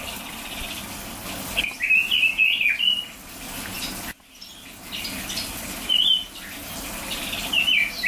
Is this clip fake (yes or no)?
no